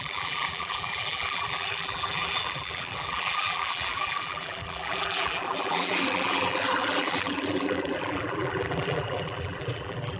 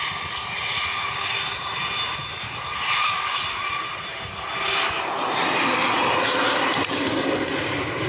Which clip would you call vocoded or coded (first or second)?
first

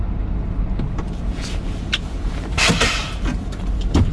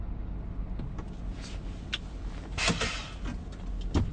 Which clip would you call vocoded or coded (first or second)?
first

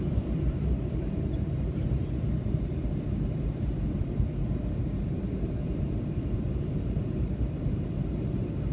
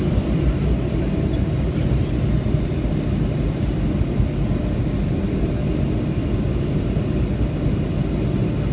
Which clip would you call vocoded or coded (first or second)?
first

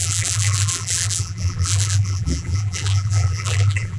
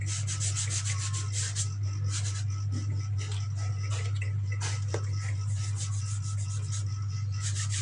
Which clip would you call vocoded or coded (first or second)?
first